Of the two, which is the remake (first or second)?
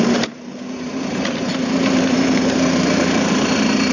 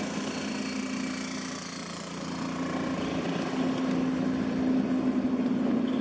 first